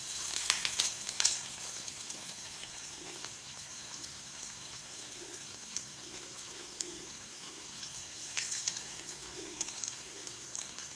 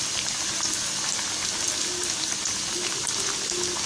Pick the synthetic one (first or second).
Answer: first